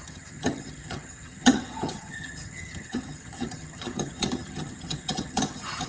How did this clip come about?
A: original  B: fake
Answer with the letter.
B